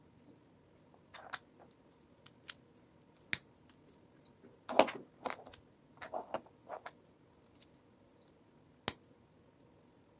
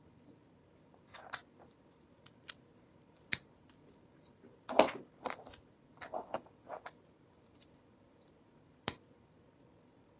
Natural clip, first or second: first